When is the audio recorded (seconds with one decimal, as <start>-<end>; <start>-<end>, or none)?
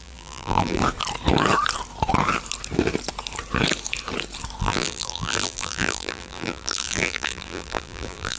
0.8-4.6